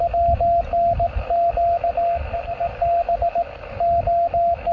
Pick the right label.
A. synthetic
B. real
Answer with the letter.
B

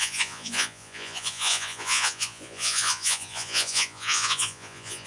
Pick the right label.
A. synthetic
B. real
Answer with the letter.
A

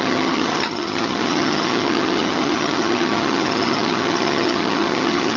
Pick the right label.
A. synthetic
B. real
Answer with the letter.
A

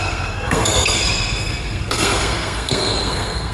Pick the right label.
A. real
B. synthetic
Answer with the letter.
B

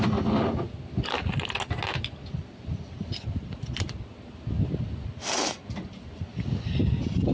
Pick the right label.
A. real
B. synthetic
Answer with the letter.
A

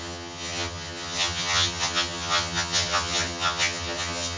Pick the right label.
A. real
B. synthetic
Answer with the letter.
B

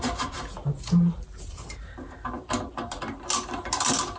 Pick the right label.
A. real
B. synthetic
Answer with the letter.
B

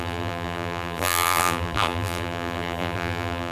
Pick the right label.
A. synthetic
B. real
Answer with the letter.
A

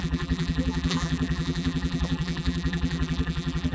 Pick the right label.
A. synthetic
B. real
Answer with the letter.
A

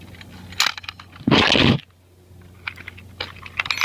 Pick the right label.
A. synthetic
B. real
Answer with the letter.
B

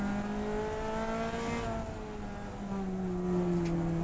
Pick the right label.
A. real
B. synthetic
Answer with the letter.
A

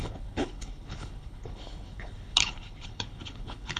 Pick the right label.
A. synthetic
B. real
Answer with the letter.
A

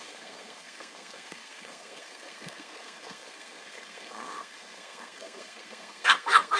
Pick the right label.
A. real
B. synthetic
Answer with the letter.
B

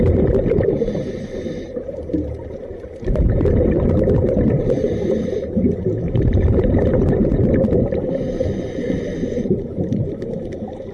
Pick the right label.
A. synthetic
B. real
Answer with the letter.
A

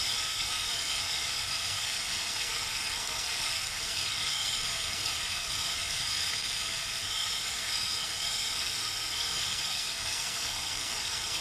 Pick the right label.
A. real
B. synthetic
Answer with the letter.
B